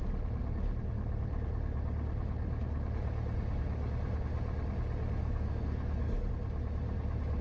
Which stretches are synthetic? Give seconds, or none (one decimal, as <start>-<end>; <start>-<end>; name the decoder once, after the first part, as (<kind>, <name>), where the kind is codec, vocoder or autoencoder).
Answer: 5.2-6.3 (codec, SNAC)